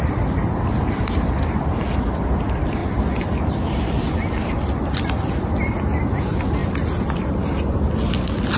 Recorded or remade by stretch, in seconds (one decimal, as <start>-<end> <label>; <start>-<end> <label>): 0.0-2.8 recorded; 2.8-4.5 remade; 4.5-6.6 recorded; 6.6-7.4 remade; 7.4-8.6 recorded